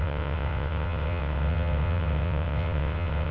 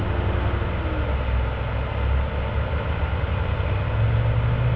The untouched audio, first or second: second